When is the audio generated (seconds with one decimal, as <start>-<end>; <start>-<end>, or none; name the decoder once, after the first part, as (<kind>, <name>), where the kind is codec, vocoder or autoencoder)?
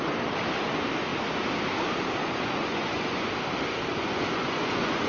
2.2-3.3 (vocoder, Vocos); 3.9-5.1